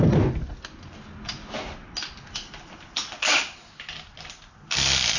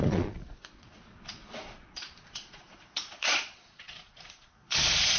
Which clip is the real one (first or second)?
first